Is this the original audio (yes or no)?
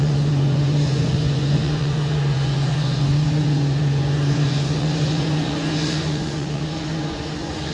no